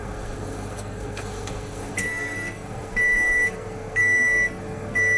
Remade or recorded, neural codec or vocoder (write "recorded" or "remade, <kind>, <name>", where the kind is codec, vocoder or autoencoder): remade, codec, SNAC